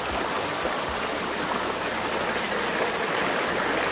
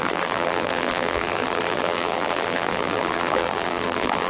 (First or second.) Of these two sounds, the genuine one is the first